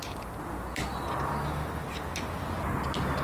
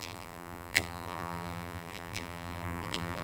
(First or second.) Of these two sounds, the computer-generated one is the second